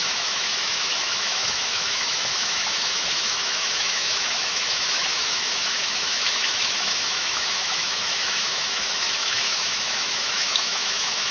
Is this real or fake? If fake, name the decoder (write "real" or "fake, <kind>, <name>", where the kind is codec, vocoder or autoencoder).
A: fake, autoencoder, DAC-VAE